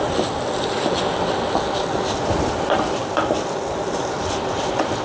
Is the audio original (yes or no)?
yes